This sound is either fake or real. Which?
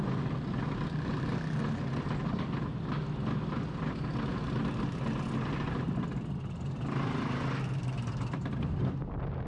real